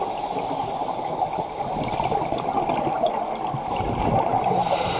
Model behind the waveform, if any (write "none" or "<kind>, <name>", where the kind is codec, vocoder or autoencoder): none